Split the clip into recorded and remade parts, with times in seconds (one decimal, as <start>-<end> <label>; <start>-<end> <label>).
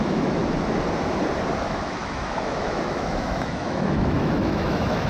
0.0-0.4 remade; 0.4-1.6 recorded; 1.6-5.1 remade